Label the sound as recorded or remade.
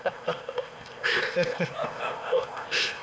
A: remade